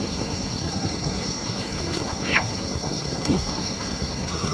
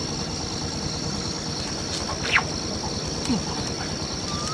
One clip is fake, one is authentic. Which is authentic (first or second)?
second